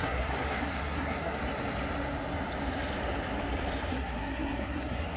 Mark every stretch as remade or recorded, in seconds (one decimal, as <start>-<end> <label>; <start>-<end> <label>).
0.0-1.4 remade; 1.4-3.9 recorded; 3.9-5.2 remade